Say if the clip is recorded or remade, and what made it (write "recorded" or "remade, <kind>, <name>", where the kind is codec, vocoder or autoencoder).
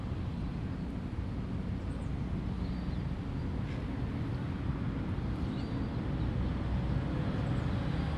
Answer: recorded